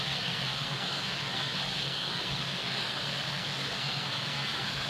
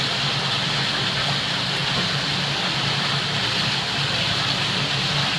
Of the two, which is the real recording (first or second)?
second